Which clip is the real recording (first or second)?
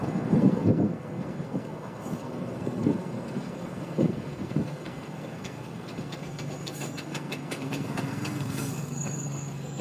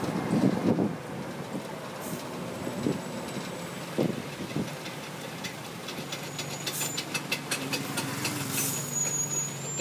second